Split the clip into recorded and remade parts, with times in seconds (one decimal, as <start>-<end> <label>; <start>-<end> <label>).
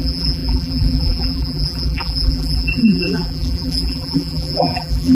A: 0.0-5.1 remade